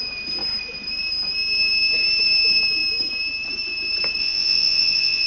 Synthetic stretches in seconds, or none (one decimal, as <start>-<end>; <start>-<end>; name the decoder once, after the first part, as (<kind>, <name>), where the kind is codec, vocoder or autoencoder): 4.2-5.3 (vocoder, Vocos)